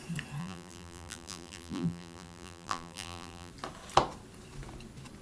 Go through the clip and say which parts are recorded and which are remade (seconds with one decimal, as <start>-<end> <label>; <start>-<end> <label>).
0.0-0.4 recorded; 0.4-3.5 remade; 3.5-5.2 recorded